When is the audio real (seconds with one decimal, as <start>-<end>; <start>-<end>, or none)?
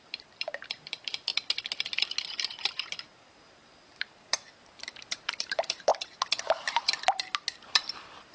1.3-2.7; 5.9-6.4; 6.9-7.6